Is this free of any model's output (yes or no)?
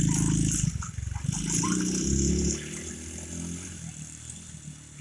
yes